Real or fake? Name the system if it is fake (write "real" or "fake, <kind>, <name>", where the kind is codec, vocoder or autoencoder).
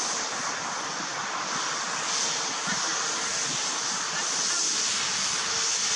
real